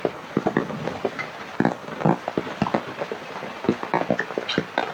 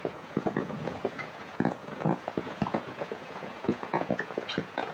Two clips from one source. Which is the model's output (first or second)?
second